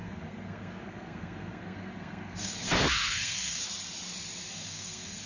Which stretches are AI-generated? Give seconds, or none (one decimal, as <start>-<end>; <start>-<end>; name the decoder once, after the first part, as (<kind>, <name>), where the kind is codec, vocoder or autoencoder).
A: 0.0-3.6 (codec, SNAC); 4.5-5.3